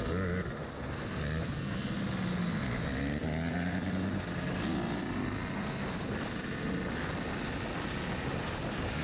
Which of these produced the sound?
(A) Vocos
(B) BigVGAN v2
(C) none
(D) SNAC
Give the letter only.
C